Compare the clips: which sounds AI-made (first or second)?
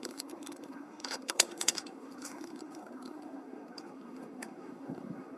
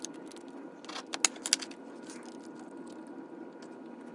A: first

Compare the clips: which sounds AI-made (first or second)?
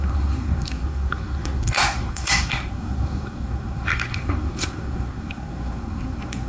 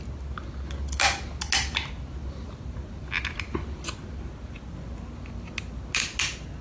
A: first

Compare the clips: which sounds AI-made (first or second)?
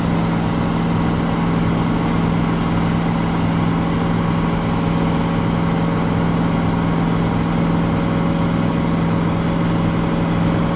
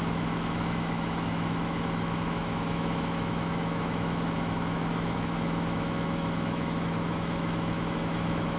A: second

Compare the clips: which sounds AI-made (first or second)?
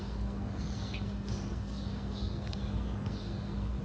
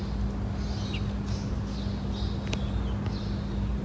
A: first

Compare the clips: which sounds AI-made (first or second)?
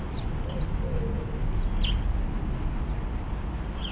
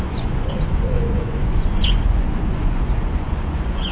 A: second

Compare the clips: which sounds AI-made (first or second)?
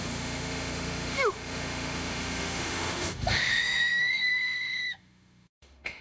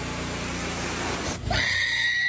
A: first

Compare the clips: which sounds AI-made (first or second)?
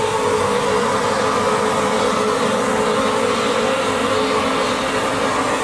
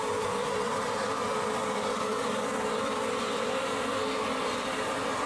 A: second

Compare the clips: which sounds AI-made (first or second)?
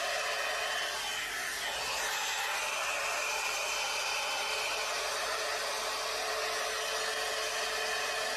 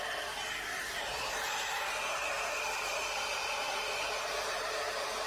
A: second